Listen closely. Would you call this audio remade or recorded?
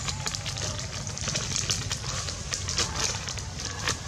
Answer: recorded